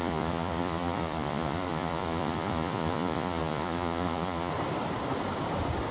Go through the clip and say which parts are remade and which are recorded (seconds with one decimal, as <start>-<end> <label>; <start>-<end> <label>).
0.0-4.5 remade; 4.5-5.9 recorded